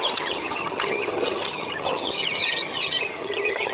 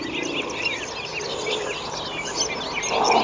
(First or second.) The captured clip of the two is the second